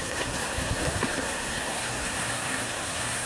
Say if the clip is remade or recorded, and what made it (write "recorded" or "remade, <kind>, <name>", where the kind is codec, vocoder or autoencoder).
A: remade, codec, SNAC